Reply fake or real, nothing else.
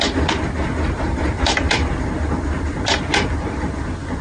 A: fake